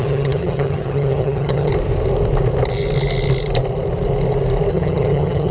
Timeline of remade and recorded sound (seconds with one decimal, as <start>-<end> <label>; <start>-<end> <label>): 0.0-1.7 remade; 1.7-4.7 recorded; 4.7-5.5 remade